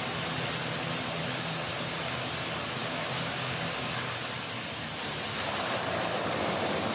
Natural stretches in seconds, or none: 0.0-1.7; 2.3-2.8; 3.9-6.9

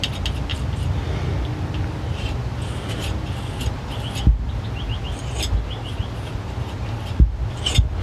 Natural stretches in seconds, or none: 0.0-0.5; 1.1-8.0